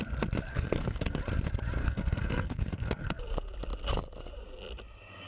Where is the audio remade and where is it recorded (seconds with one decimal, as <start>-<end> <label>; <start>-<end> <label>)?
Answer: 0.0-0.5 recorded; 0.5-1.2 remade; 1.2-1.8 recorded; 1.8-3.2 remade; 3.2-5.3 recorded

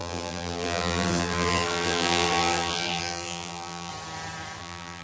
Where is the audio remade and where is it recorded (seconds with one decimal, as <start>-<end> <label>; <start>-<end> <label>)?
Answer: 0.0-3.9 remade; 3.9-4.6 recorded; 4.6-5.0 remade

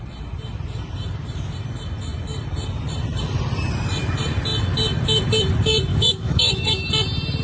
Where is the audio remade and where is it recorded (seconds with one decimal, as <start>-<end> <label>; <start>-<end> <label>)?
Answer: 0.0-5.9 recorded; 5.9-6.7 remade; 6.7-7.4 recorded

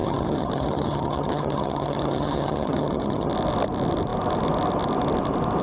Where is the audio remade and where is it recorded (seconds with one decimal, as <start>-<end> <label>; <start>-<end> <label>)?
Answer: 0.0-3.3 remade; 3.3-5.6 recorded

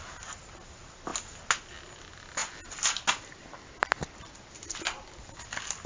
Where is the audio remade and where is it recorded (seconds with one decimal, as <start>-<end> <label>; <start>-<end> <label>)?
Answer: 0.0-5.9 recorded

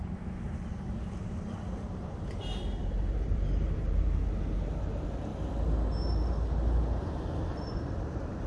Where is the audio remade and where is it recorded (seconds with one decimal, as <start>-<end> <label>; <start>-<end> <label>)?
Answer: 0.0-5.3 remade; 5.3-7.5 recorded; 7.5-8.5 remade